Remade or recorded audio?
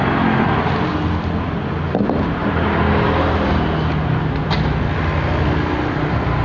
recorded